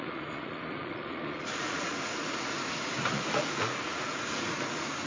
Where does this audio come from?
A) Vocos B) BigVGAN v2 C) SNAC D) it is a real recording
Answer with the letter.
A